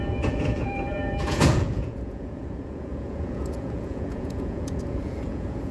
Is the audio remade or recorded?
remade